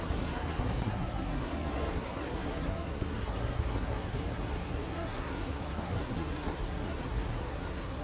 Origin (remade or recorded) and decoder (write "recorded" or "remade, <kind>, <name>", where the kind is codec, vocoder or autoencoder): remade, codec, SNAC